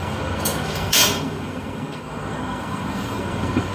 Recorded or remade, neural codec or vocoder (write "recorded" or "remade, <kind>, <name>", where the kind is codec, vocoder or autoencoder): remade, codec, SNAC